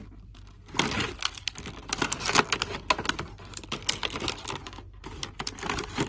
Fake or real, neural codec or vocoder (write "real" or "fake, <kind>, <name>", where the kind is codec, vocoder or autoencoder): real